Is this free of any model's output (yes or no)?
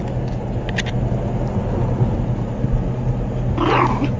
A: yes